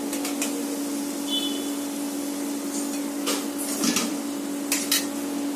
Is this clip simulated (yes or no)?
no